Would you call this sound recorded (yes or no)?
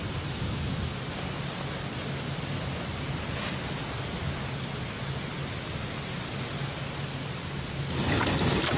yes